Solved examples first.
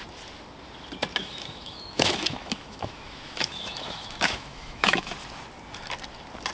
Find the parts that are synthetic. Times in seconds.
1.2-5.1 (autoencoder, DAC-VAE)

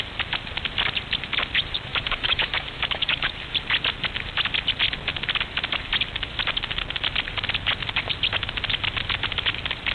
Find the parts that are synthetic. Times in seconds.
1.9-3.3 (autoencoder, DAC-VAE)

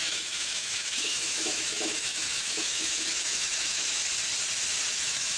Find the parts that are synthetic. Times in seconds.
0.0-4.0 (autoencoder, DAC-VAE); 4.9-5.4

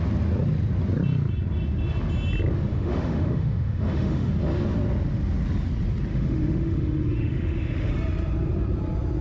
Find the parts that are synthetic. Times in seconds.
2.7-4.3 (autoencoder, DAC-VAE); 6.1-7.9

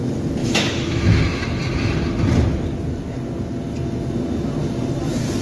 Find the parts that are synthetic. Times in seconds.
0.4-1.2 (autoencoder, DAC-VAE)

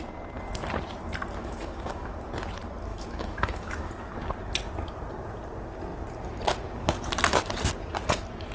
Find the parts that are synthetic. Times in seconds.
1.4-2.2 (autoencoder, DAC-VAE); 2.9-3.9